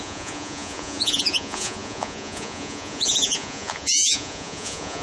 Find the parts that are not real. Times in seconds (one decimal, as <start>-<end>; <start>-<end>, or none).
0.0-5.0